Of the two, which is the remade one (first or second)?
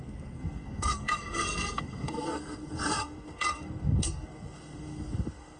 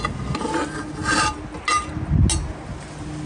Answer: first